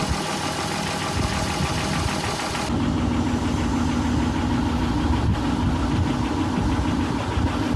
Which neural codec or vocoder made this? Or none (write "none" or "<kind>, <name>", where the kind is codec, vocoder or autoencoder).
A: none